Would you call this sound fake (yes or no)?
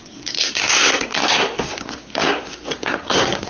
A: yes